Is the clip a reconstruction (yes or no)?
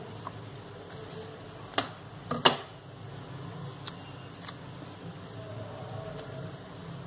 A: no